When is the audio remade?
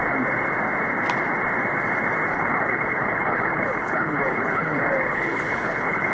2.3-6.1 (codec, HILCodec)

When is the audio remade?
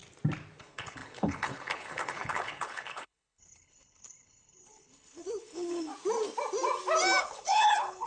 0.6-5.9 (codec, HILCodec); 7.2-8.1